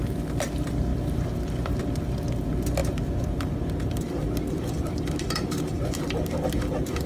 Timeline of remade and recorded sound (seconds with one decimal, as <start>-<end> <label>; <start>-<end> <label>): 0.0-2.8 recorded; 2.8-7.1 remade